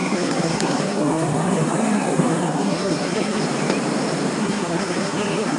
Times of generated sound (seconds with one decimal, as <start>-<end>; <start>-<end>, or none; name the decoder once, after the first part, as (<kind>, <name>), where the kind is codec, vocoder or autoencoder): 0.0-3.4 (codec, SNAC); 4.4-5.6